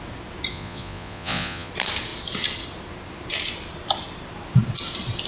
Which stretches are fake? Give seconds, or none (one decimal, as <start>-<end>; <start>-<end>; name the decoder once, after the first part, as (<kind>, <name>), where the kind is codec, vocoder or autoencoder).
0.5-1.7 (vocoder, Vocos)